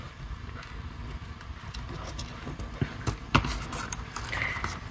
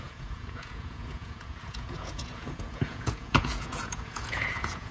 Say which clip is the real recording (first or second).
first